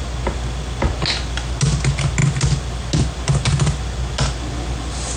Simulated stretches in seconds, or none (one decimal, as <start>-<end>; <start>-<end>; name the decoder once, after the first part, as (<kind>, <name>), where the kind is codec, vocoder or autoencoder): none